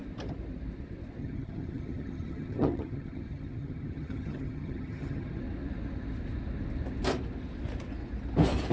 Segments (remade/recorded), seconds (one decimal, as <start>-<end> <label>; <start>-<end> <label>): 0.0-1.2 recorded; 1.2-5.4 remade; 5.4-8.7 recorded